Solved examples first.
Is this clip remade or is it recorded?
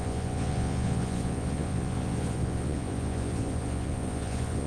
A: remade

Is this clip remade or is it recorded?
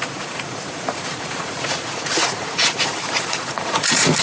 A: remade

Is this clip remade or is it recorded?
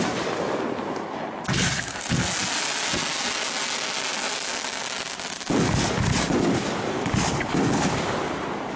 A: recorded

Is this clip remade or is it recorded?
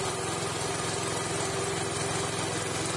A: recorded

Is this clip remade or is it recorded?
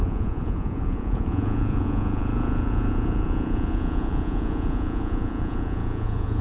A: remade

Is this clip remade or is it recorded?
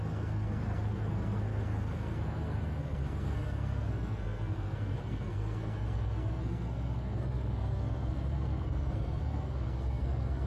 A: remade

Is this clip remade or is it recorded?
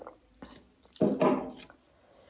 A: recorded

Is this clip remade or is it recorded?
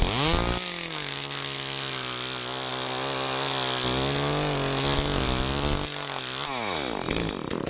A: recorded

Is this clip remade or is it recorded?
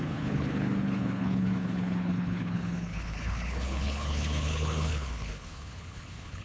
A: remade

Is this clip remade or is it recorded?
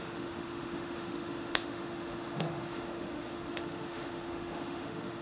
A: remade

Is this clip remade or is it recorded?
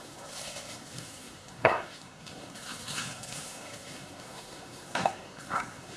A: remade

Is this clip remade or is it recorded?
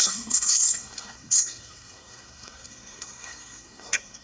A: remade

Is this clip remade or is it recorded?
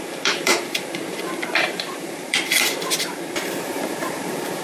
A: remade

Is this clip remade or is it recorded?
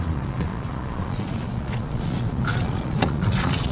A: remade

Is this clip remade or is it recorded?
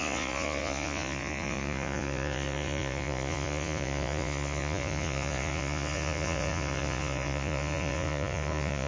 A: remade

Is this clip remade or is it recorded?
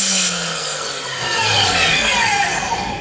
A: remade